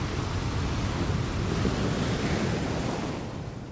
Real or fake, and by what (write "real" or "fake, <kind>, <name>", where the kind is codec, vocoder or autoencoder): real